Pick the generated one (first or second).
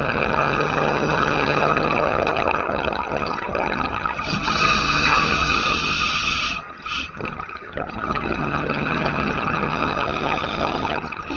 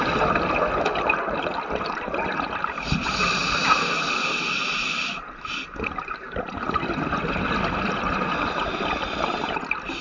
first